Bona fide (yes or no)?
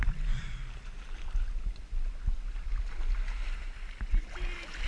yes